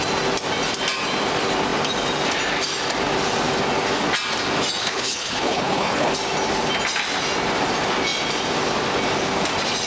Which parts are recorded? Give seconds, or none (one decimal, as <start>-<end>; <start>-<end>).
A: 0.0-4.8; 6.1-9.9